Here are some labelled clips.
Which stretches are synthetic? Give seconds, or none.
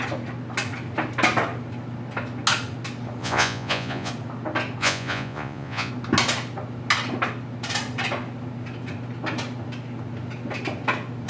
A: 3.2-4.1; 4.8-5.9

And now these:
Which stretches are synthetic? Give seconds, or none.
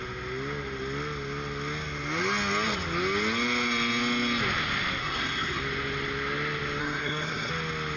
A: 5.0-5.6; 6.8-7.5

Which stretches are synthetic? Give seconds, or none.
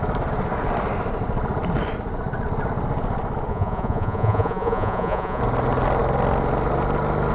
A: 3.5-5.4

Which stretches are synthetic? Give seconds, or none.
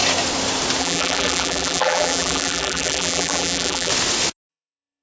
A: 0.8-3.9; 4.5-5.0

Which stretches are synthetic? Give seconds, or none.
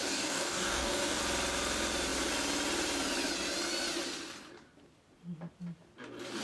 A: 0.0-1.2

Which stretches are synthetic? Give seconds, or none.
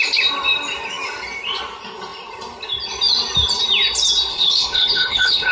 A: 4.3-5.5